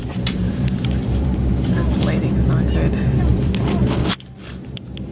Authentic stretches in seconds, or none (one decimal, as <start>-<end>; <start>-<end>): 1.5-3.3; 4.0-5.1